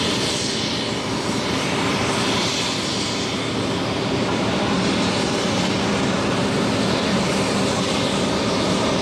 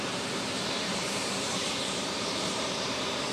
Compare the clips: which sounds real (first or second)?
first